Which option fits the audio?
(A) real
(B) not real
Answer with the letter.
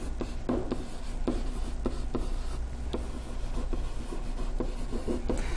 A